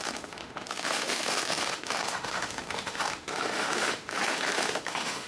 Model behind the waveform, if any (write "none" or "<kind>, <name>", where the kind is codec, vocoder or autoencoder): autoencoder, DAC-VAE